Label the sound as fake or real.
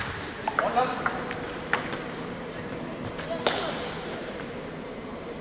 fake